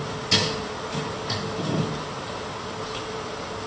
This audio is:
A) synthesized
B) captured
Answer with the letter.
B